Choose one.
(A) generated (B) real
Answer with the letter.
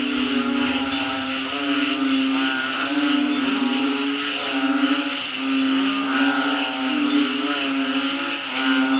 B